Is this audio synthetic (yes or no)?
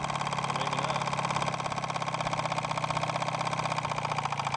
no